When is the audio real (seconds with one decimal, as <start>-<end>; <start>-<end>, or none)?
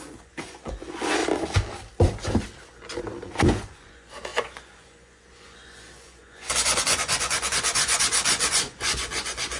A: 1.2-3.4